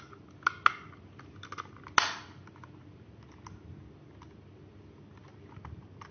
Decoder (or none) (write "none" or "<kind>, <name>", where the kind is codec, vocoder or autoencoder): none